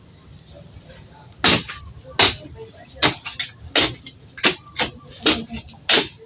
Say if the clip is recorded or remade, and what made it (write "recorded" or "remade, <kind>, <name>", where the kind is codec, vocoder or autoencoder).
recorded